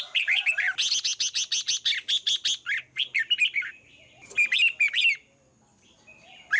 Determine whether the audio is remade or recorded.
recorded